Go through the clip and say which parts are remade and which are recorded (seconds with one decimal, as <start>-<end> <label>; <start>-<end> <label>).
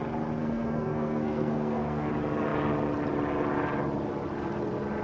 0.0-0.4 recorded; 0.4-2.1 remade; 2.1-5.0 recorded